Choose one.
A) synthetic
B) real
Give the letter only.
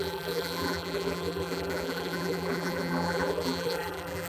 A